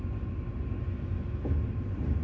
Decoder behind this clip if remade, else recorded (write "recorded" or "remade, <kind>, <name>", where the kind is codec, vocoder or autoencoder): remade, vocoder, BigVGAN v2